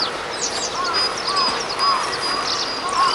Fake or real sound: real